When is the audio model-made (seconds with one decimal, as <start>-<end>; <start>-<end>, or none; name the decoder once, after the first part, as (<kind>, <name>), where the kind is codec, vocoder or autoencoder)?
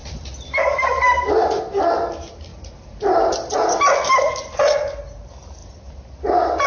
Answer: 0.0-1.3 (vocoder, BigVGAN v2); 2.5-4.1